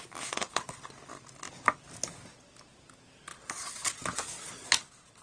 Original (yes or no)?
yes